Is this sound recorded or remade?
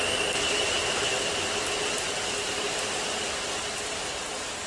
recorded